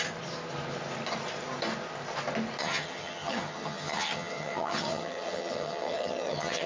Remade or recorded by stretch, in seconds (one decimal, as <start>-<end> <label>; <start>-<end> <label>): 0.0-2.6 recorded; 2.6-6.7 remade